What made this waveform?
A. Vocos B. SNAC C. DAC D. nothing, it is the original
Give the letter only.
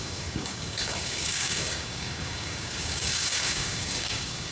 C